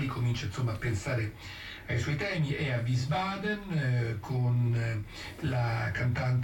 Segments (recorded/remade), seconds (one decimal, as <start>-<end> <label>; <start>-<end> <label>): 0.0-6.4 recorded